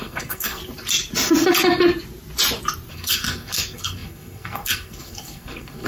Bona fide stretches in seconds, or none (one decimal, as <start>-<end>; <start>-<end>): 0.6-2.9